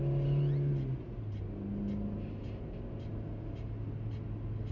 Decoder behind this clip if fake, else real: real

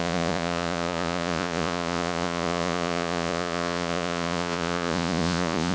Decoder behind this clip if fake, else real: fake, vocoder, Vocos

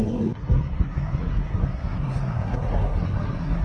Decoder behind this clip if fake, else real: fake, codec, SNAC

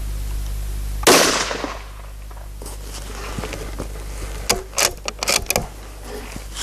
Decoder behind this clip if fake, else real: real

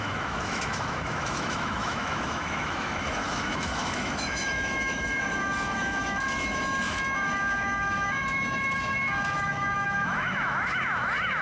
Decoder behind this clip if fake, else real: fake, autoencoder, DAC-VAE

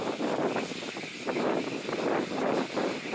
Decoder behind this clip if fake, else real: real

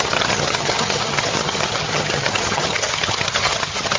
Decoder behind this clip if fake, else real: fake, vocoder, HiFi-GAN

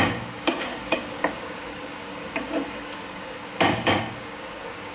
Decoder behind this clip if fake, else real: fake, codec, DAC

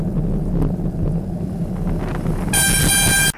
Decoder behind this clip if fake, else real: real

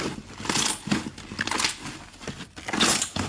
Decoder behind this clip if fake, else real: real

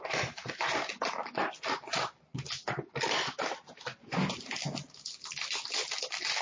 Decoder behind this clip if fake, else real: real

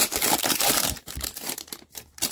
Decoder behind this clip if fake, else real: fake, vocoder, BigVGAN v2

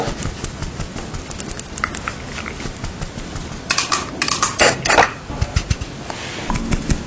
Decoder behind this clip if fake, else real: real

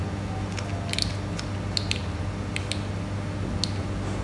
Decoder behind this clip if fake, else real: real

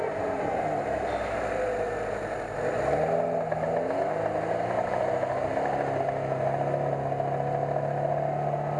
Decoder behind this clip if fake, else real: real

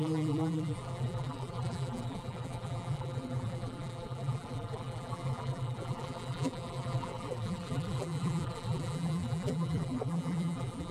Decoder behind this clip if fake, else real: fake, vocoder, BigVGAN v2